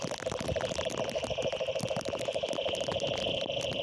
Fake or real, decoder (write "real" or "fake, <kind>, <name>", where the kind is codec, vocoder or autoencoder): real